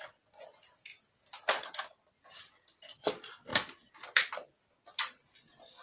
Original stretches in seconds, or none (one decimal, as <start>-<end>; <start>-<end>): 3.5-4.7